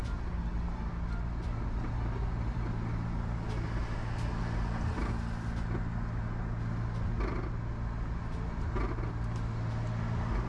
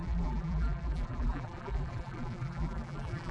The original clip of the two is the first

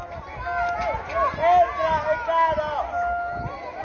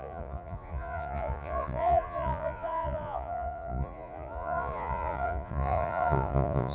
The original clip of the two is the first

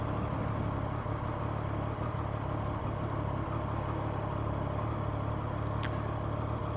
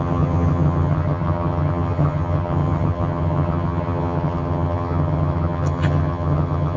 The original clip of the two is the first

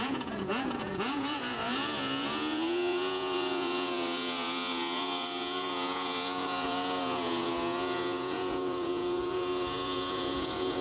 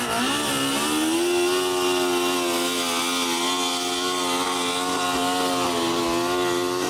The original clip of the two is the second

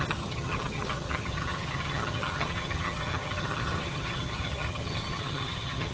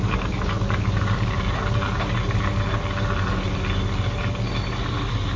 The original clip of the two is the second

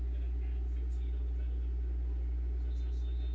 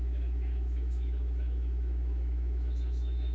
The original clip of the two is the first